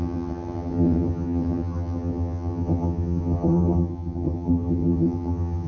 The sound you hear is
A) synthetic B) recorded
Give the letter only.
A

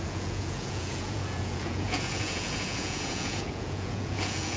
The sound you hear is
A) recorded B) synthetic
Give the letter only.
B